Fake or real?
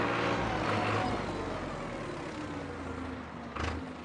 real